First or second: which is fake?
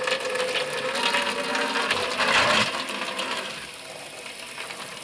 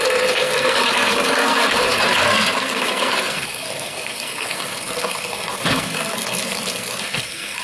second